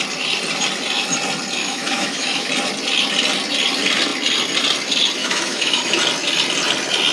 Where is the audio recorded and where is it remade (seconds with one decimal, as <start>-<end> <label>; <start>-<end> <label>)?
0.0-1.6 recorded; 1.6-2.5 remade; 2.5-5.2 recorded; 5.2-6.0 remade; 6.0-7.1 recorded